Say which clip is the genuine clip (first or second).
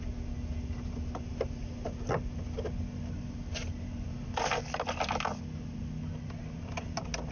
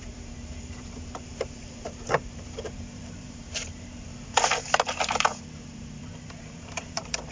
first